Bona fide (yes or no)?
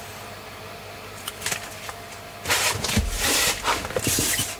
yes